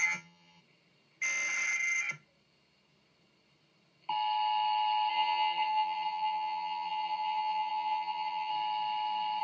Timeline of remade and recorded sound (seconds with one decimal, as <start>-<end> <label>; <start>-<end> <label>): 0.0-0.6 remade; 0.6-5.1 recorded; 5.1-8.5 remade; 8.5-9.4 recorded